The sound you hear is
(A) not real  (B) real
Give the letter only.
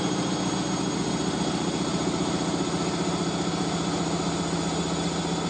B